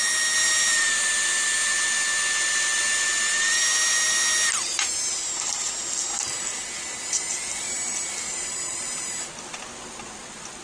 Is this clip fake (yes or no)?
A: no